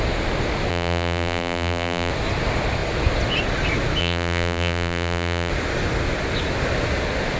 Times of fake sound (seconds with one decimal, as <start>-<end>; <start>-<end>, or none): 0.7-2.1; 4.0-5.5